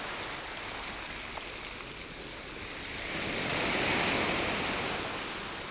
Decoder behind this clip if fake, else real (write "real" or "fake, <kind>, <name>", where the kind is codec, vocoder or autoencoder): real